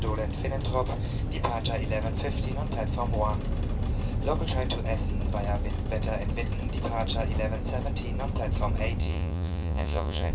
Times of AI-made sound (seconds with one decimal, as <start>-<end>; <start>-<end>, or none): 9.0-10.3